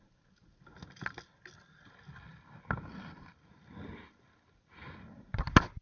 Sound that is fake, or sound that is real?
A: real